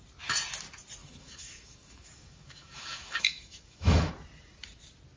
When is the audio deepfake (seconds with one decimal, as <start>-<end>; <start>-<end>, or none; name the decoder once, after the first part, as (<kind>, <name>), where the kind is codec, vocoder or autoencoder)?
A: 1.0-4.1 (autoencoder, DAC-VAE)